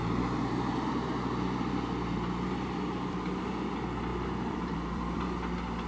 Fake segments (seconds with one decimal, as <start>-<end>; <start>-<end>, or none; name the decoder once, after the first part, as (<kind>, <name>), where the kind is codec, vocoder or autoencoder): 0.0-0.9 (vocoder, BigVGAN v2); 4.1-5.2